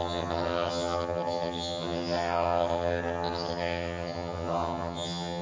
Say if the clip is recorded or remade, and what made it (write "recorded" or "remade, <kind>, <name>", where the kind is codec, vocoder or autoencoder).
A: remade, vocoder, HiFi-GAN